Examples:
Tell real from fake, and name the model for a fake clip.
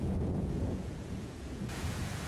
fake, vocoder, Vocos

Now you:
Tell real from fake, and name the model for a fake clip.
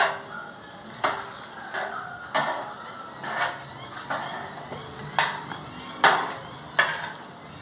real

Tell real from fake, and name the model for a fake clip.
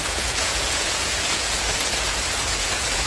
fake, vocoder, Vocos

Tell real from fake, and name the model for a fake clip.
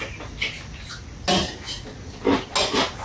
real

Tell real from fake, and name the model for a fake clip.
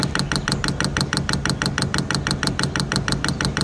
real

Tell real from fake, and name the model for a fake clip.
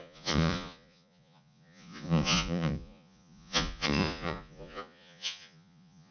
fake, vocoder, Vocos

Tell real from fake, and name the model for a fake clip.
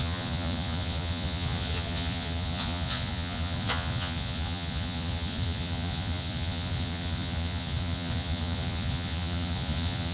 fake, vocoder, Vocos